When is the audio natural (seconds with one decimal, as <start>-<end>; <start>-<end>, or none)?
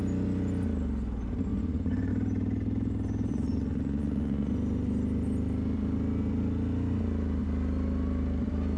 0.0-1.5; 2.1-3.3; 4.5-8.8